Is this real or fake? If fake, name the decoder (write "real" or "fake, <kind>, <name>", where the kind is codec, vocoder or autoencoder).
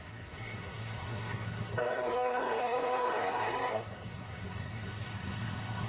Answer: fake, codec, SNAC